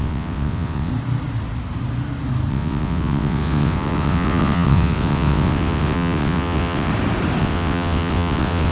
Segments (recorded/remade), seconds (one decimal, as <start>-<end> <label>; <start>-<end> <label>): 0.0-0.9 remade; 0.9-2.5 recorded; 2.5-6.9 remade; 6.9-7.4 recorded; 7.4-8.7 remade